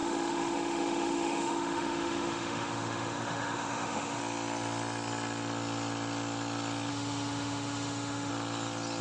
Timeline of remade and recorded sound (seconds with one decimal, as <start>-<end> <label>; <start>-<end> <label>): 0.0-4.2 remade; 4.2-6.9 recorded; 6.9-8.3 remade; 8.3-9.0 recorded